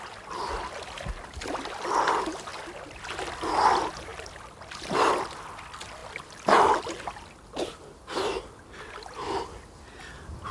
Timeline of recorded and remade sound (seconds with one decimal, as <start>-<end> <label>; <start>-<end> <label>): 0.0-2.5 recorded; 2.5-3.0 remade; 3.0-10.5 recorded